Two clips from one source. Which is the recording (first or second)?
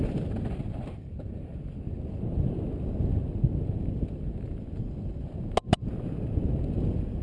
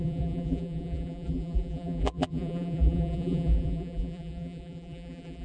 first